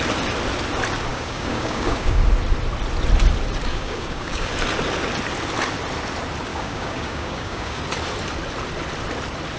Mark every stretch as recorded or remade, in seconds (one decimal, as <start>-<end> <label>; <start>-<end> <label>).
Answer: 0.0-1.1 recorded; 1.1-2.2 remade; 2.2-3.7 recorded; 3.7-4.5 remade; 4.5-6.5 recorded; 6.5-7.8 remade; 7.8-9.6 recorded